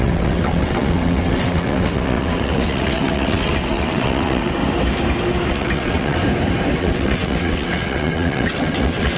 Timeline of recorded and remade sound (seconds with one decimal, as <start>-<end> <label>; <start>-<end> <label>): 0.0-4.6 remade; 4.6-5.5 recorded; 5.5-6.2 remade; 6.2-6.8 recorded; 6.8-9.2 remade